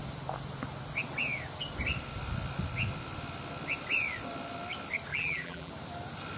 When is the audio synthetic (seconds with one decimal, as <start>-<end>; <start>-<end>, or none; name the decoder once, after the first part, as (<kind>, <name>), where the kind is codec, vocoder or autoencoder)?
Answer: 5.1-5.7 (vocoder, BigVGAN v2)